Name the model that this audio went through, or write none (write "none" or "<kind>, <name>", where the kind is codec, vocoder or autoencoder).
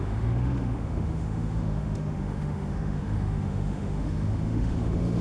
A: autoencoder, DAC-VAE